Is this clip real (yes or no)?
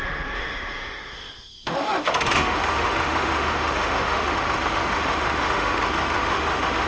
no